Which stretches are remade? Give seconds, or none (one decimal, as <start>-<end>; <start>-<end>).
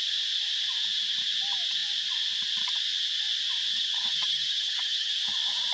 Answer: 3.7-5.1